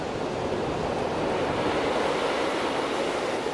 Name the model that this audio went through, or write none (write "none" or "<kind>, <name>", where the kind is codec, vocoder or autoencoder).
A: none